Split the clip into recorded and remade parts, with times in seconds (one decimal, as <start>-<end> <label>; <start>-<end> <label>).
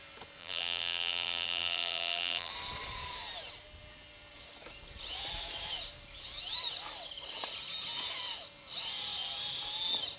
0.0-0.4 recorded; 0.4-2.5 remade; 2.5-10.2 recorded